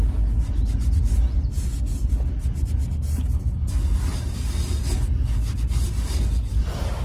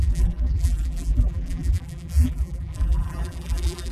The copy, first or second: second